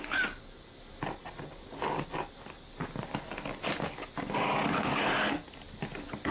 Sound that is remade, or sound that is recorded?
recorded